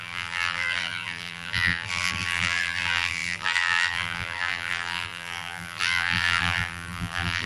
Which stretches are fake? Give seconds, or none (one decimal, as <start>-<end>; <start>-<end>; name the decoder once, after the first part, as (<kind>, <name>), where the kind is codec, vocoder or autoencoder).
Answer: 0.0-7.5 (vocoder, BigVGAN v2)

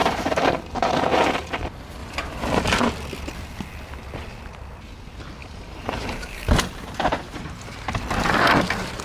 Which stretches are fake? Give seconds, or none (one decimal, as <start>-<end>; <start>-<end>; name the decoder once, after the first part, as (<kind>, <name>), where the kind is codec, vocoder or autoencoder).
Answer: 0.0-0.9 (vocoder, BigVGAN v2); 5.4-8.0

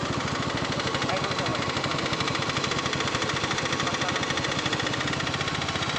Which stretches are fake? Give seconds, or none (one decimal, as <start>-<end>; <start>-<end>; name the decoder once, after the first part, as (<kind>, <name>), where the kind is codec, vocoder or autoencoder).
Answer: none

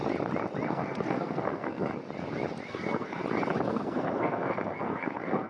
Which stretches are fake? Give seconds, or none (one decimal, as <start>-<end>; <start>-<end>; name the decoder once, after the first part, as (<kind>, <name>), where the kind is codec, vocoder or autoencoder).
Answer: 0.7-1.9 (codec, SNAC); 2.7-3.2; 3.7-5.5

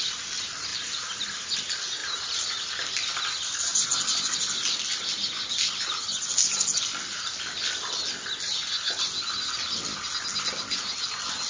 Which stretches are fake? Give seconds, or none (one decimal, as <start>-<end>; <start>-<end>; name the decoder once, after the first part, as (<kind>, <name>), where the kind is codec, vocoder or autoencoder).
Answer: 0.7-1.2 (vocoder, BigVGAN v2); 2.0-2.7

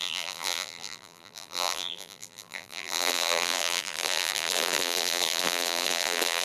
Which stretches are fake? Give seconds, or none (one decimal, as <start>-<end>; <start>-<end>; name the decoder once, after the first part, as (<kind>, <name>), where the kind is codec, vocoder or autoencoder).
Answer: 0.0-6.4 (vocoder, BigVGAN v2)

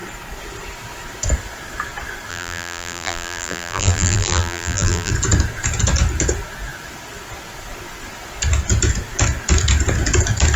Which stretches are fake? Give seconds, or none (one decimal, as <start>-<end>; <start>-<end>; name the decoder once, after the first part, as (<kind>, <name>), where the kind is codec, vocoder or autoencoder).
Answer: 2.3-5.1 (vocoder, BigVGAN v2)